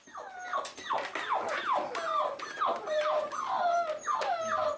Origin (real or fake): real